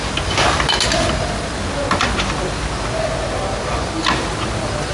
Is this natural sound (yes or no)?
yes